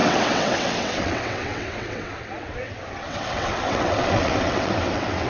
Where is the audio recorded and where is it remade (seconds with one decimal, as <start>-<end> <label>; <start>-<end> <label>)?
0.0-5.3 remade